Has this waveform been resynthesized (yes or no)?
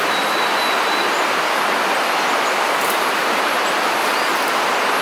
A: no